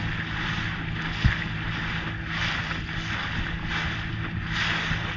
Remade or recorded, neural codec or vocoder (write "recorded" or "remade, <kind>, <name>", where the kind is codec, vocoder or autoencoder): recorded